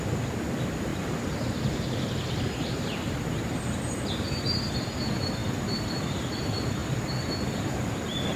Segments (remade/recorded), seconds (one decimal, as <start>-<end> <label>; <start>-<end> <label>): 0.0-8.4 recorded